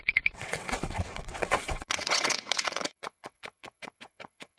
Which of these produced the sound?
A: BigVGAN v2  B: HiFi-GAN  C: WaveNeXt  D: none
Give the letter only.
C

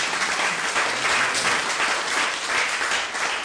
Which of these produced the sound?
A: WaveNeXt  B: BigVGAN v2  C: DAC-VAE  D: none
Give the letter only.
D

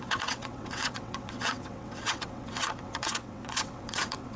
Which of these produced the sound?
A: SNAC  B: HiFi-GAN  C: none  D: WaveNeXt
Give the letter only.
D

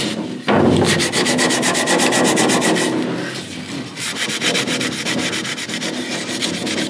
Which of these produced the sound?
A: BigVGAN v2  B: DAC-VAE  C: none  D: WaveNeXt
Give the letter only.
C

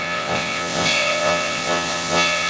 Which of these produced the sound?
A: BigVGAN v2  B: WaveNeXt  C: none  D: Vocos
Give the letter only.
B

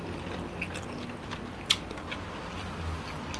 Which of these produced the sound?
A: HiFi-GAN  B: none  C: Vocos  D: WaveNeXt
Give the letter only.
B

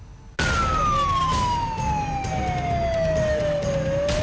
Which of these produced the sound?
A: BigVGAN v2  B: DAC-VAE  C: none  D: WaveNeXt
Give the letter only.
C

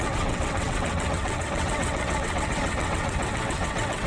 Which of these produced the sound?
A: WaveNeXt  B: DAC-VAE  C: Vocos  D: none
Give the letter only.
A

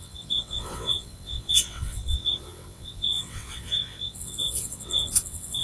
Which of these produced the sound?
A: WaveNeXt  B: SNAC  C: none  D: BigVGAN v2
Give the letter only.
A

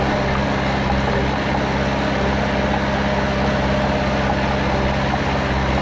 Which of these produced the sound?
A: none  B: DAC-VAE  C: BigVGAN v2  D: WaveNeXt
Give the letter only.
A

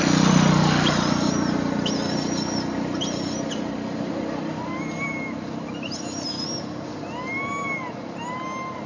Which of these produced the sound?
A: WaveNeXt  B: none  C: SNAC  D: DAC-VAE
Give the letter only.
B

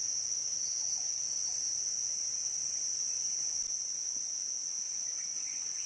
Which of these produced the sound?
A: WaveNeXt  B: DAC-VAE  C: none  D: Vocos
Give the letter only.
C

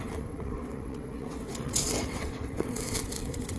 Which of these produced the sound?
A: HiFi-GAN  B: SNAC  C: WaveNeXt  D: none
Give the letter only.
C